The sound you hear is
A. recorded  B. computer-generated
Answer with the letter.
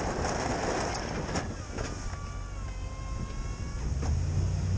A